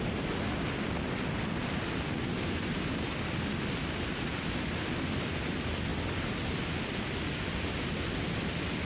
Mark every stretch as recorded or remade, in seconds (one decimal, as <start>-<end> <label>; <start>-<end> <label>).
0.0-8.8 recorded

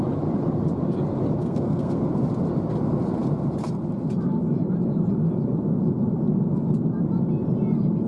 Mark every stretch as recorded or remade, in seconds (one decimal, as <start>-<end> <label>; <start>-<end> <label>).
0.0-1.4 recorded; 1.4-2.0 remade; 2.0-8.1 recorded

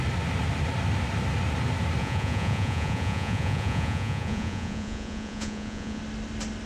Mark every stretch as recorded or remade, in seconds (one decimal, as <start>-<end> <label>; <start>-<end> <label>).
0.0-2.0 recorded; 2.0-6.0 remade; 6.0-6.7 recorded

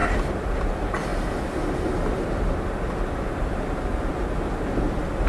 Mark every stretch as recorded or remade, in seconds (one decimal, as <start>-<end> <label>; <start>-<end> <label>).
0.0-5.3 recorded

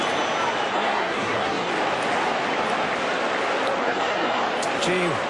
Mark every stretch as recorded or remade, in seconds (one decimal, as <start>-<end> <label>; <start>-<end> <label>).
0.0-0.7 recorded; 0.7-1.7 remade; 1.7-3.8 recorded; 3.8-4.4 remade; 4.4-5.3 recorded

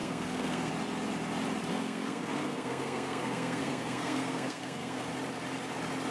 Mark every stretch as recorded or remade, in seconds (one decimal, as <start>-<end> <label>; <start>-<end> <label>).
0.0-0.7 remade; 0.7-1.7 recorded; 1.7-5.1 remade; 5.1-6.1 recorded

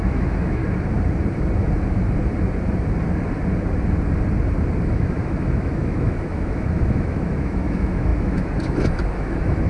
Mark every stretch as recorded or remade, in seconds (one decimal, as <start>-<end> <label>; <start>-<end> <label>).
0.0-0.6 remade; 0.6-4.8 recorded; 4.8-9.7 remade